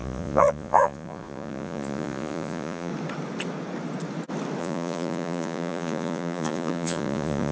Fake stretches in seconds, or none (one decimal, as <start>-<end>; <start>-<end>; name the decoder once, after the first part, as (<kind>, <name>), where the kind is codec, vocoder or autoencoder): 0.0-2.9 (vocoder, Vocos); 4.6-7.5